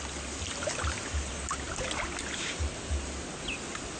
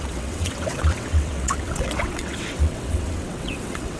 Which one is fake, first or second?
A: second